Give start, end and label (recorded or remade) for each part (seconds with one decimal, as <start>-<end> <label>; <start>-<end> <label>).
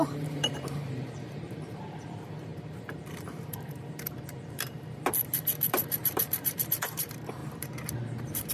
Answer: 0.0-8.5 remade